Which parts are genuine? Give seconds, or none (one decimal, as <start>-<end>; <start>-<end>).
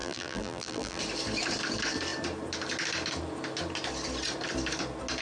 1.0-5.2